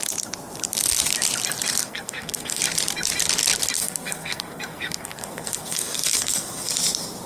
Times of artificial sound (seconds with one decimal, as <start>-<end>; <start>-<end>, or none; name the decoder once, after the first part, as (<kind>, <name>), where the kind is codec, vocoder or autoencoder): 1.8-2.6 (codec, SNAC); 3.8-6.7